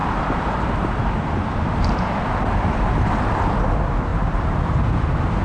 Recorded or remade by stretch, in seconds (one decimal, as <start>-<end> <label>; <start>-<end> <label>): 0.0-3.2 remade; 3.2-4.1 recorded; 4.1-5.0 remade; 5.0-5.4 recorded